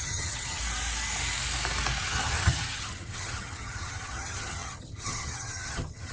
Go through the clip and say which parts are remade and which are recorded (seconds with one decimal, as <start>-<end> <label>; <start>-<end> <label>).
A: 0.0-0.6 remade; 0.6-2.0 recorded; 2.0-6.1 remade